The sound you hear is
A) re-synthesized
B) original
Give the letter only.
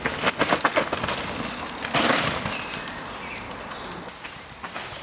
B